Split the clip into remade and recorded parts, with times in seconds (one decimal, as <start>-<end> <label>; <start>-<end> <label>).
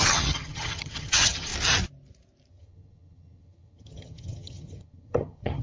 0.0-1.5 remade; 1.5-2.5 recorded; 2.5-5.6 remade